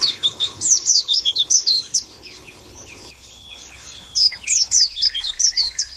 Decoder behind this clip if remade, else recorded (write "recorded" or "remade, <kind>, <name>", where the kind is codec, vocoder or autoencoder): remade, codec, HILCodec